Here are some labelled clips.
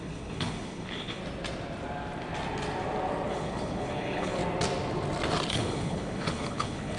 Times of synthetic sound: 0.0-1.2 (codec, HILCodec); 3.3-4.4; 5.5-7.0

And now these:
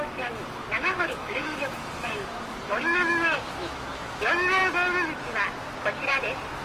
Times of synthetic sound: 0.0-4.6 (autoencoder, DAC-VAE)

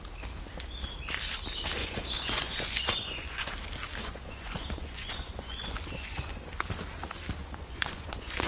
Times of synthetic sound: 1.8-3.5 (vocoder, Vocos); 4.0-6.3; 7.4-8.5

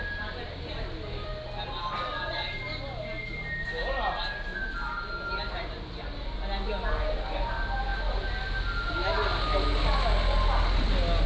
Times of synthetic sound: none